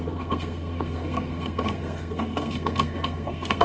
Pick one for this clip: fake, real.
fake